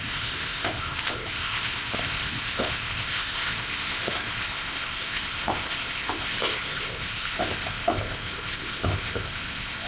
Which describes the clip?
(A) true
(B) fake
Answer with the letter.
B